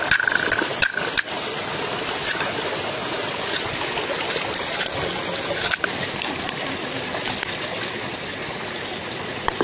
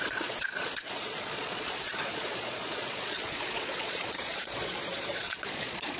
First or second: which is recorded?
first